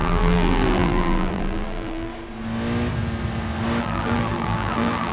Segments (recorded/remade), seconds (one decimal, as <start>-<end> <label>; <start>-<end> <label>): 0.0-2.1 remade; 2.1-3.8 recorded; 3.8-5.1 remade